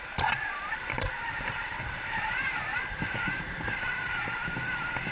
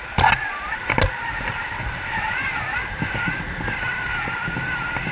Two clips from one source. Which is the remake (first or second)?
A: first